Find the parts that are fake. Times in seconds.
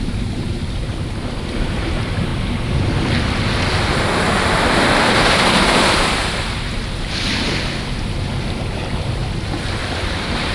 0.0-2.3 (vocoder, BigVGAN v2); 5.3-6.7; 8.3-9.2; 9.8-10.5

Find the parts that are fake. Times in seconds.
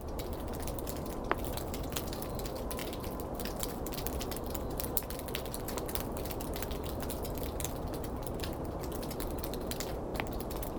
2.8-7.6 (vocoder, BigVGAN v2); 10.1-10.8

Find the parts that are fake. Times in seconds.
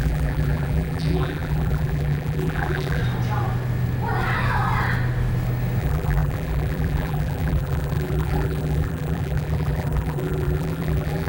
0.0-3.0 (vocoder, BigVGAN v2); 5.8-11.3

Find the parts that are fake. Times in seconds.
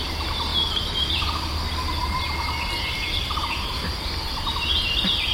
0.5-1.6 (vocoder, BigVGAN v2); 2.0-3.9